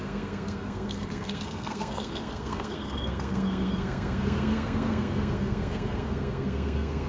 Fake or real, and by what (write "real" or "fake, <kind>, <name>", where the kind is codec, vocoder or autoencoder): fake, codec, SNAC